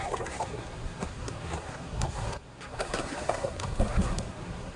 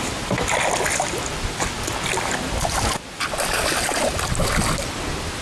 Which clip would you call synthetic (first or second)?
first